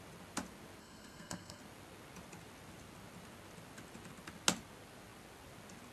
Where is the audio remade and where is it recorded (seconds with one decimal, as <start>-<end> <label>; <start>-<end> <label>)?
0.0-0.8 recorded; 0.8-1.6 remade; 1.6-5.9 recorded